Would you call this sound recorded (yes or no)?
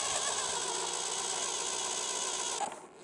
yes